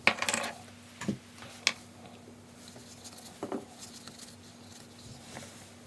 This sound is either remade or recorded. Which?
recorded